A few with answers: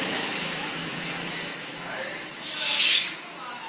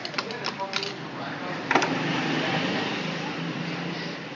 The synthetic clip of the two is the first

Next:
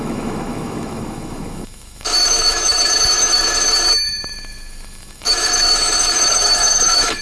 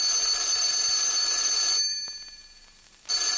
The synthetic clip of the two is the first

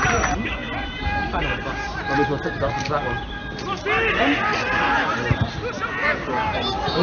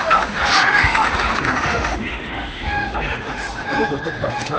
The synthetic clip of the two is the second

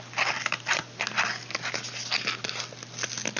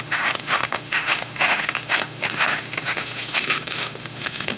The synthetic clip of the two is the second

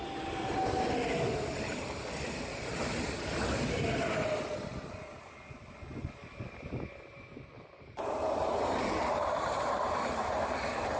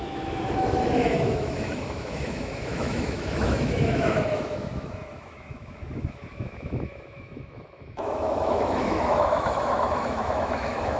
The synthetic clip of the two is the second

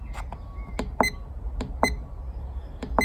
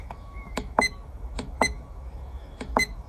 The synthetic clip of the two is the second